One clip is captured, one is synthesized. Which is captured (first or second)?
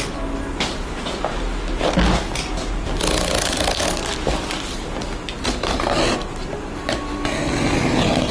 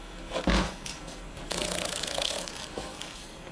first